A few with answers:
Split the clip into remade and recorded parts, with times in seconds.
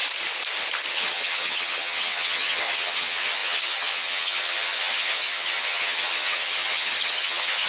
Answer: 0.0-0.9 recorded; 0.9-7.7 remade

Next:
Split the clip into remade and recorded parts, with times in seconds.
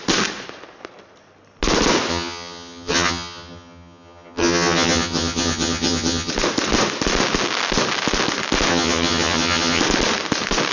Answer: 0.0-2.1 recorded; 2.1-6.3 remade; 6.3-8.7 recorded; 8.7-9.8 remade; 9.8-10.7 recorded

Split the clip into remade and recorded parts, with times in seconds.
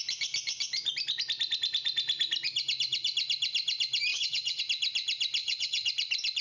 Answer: 0.0-4.1 recorded; 4.1-4.6 remade; 4.6-5.4 recorded; 5.4-5.9 remade; 5.9-6.4 recorded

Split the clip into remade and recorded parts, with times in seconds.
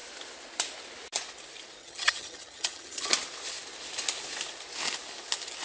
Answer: 0.0-1.8 recorded; 1.8-3.1 remade; 3.1-5.6 recorded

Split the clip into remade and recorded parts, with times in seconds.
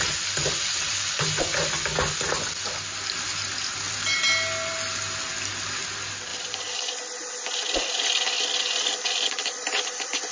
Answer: 0.0-10.3 recorded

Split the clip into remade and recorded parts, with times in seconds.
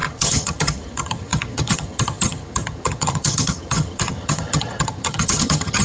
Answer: 0.0-5.8 remade